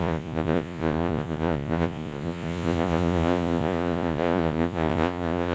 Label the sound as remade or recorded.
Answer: remade